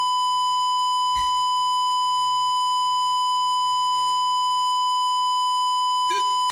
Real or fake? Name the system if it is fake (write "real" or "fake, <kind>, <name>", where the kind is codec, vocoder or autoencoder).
fake, autoencoder, DAC-VAE